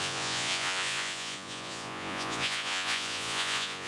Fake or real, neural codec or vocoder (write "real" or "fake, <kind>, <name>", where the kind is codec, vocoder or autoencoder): fake, vocoder, Vocos